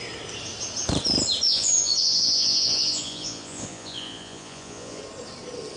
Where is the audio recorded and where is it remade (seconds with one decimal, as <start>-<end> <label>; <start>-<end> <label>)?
0.0-1.5 recorded; 1.5-5.0 remade; 5.0-5.8 recorded